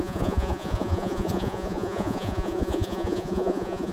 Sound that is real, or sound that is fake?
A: fake